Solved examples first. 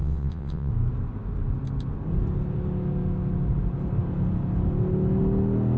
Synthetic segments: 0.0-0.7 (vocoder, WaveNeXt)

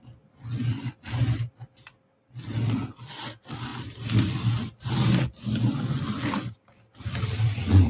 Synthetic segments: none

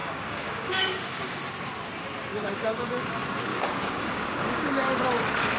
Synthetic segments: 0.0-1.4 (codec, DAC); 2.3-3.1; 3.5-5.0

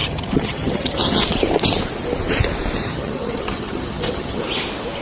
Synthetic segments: 0.0-1.2 (vocoder, HiFi-GAN); 2.8-4.4

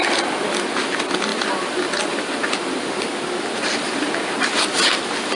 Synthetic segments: none